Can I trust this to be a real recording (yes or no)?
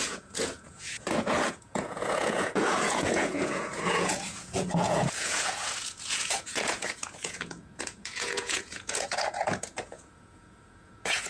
no